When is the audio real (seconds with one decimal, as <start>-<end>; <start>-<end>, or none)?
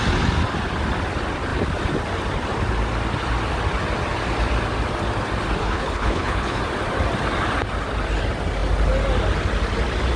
0.0-5.6; 6.6-10.2